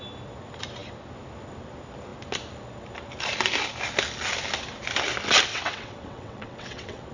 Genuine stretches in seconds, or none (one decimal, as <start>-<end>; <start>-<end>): 0.0-5.5